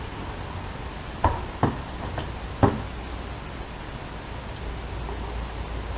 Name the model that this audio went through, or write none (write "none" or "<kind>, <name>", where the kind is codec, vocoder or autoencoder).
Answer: none